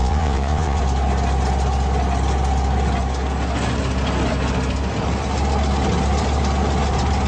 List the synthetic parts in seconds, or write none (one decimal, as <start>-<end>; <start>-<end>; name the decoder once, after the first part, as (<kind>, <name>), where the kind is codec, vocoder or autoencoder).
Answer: 0.0-0.8 (vocoder, Vocos)

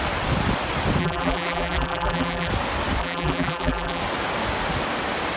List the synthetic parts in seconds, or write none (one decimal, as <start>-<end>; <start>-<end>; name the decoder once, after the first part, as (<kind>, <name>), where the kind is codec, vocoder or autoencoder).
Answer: 1.0-2.5 (vocoder, BigVGAN v2); 3.0-4.0

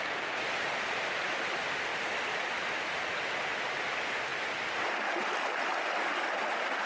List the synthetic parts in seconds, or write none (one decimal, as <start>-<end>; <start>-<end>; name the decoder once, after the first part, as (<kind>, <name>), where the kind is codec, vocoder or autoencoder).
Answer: 1.9-2.8 (vocoder, BigVGAN v2)